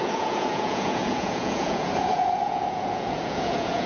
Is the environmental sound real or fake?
fake